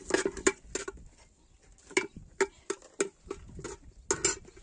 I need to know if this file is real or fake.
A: real